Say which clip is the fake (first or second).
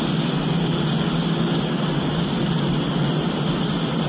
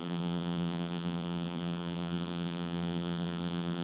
second